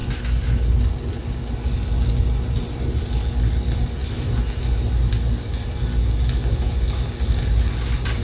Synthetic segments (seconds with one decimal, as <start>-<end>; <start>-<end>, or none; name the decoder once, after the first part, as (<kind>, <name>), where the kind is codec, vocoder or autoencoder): none